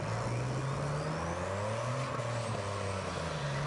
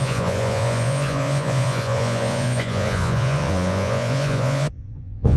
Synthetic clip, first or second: second